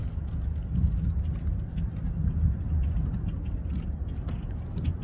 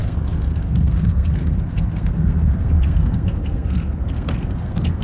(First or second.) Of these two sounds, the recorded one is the first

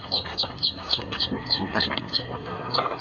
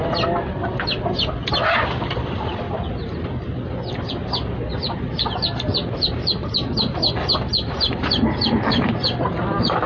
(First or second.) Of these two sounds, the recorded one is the second